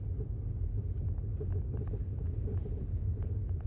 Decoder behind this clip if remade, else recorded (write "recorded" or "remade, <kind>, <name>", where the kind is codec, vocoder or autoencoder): recorded